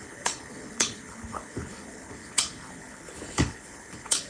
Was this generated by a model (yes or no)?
yes